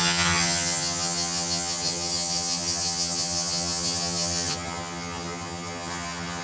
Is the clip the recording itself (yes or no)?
no